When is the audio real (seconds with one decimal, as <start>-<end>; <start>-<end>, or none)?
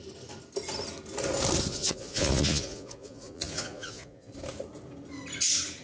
0.0-1.7; 4.3-5.8